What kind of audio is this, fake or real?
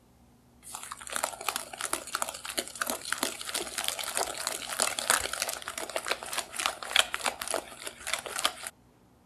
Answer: real